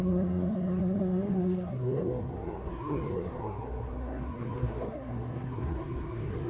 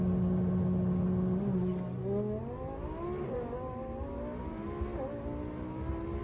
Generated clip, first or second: first